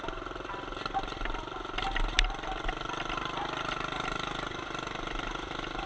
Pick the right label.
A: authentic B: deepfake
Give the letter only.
A